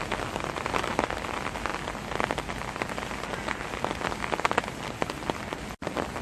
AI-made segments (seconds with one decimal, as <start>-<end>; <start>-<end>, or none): none